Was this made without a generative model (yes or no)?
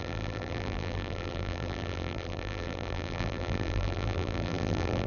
no